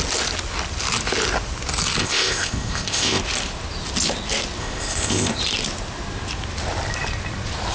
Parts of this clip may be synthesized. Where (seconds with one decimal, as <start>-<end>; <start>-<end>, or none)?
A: 2.0-3.2; 4.6-5.4